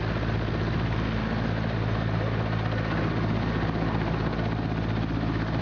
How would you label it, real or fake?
real